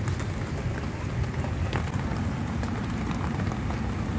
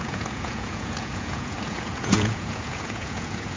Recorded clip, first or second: first